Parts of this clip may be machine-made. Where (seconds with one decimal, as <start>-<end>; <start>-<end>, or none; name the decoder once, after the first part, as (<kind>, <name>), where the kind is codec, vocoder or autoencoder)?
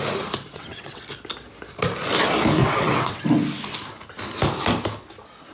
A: 0.5-1.0 (vocoder, WaveNeXt); 2.6-3.2